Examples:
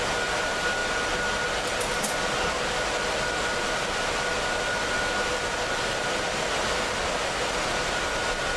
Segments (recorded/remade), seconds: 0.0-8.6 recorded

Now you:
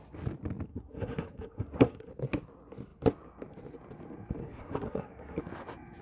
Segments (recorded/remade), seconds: 0.0-0.7 recorded; 0.7-2.1 remade; 2.1-4.4 recorded; 4.4-5.4 remade; 5.4-6.0 recorded

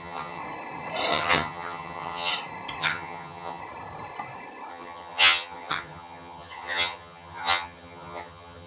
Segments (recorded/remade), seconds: 0.0-0.4 remade; 0.4-1.1 recorded; 1.1-2.3 remade; 2.3-2.8 recorded; 2.8-3.6 remade; 3.6-4.7 recorded; 4.7-8.7 remade

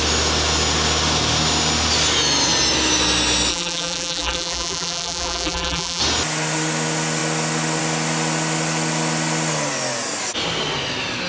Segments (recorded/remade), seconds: 0.0-3.5 recorded; 3.5-6.0 remade; 6.0-11.3 recorded